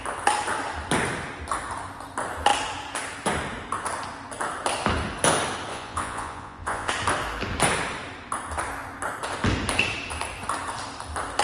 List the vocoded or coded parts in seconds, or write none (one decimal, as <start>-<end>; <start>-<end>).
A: 5.7-6.9